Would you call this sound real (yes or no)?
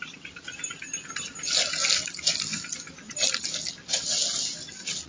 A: yes